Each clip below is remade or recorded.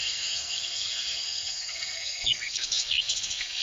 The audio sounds remade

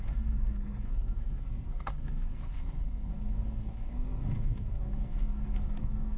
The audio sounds remade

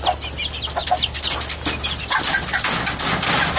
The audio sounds recorded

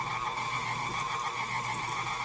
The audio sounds recorded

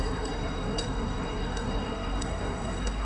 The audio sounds remade